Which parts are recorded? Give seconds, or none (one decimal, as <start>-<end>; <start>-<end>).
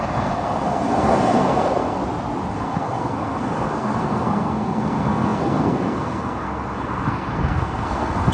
2.0-2.5